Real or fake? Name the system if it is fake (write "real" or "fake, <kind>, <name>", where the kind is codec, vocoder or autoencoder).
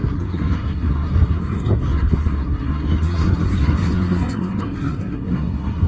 fake, codec, SNAC